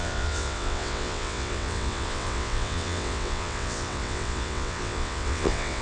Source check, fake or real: fake